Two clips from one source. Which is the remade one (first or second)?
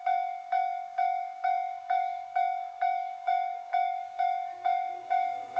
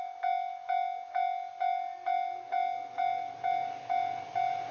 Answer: first